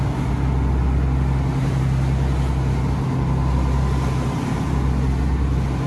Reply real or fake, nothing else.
real